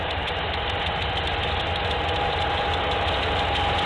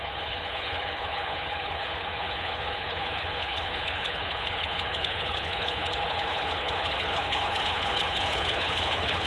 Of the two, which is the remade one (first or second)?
second